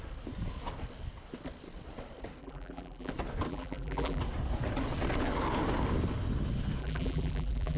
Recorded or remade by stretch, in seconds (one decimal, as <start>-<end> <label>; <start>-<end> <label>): 0.0-2.4 recorded; 2.4-3.1 remade; 3.1-3.5 recorded; 3.5-4.2 remade; 4.2-6.8 recorded; 6.8-7.8 remade